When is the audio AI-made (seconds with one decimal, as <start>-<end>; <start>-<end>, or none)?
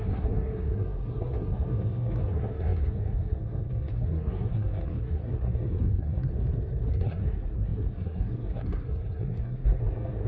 0.0-6.3; 6.9-10.3